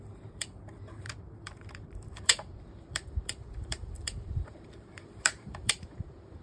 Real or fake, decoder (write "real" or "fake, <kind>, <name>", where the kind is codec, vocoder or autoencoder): fake, vocoder, BigVGAN v2